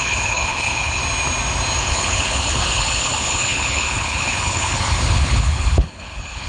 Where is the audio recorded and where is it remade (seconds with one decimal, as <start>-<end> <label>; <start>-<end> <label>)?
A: 0.0-1.0 remade; 1.0-1.8 recorded; 1.8-6.5 remade